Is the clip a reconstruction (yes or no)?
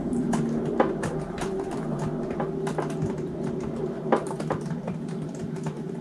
yes